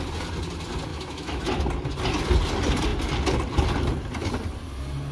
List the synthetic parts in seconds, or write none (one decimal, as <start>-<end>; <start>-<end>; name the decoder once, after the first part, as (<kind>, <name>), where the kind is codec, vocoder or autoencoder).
0.9-1.4 (autoencoder, DAC-VAE)